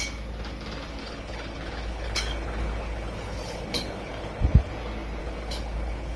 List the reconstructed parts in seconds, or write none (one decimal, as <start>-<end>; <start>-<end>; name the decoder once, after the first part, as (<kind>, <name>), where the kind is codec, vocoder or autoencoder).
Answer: 1.0-4.7 (codec, HILCodec); 5.2-6.2